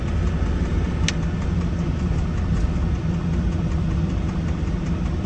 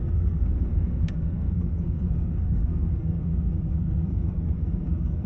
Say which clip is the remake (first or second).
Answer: second